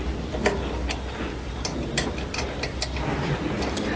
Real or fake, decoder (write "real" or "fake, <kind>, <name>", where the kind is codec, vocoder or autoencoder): real